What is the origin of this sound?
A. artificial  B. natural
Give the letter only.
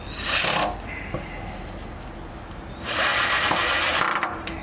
B